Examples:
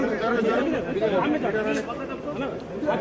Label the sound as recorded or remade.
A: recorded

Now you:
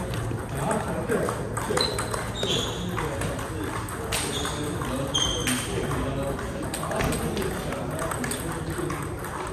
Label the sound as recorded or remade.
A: recorded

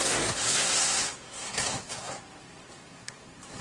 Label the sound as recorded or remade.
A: remade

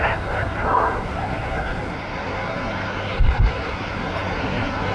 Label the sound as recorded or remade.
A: remade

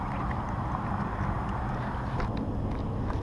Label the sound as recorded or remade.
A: recorded